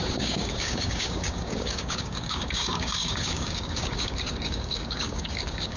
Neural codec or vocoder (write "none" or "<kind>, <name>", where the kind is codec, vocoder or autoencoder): codec, DAC